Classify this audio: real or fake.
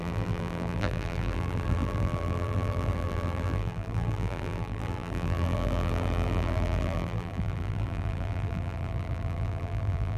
fake